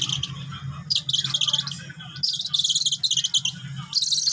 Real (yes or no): yes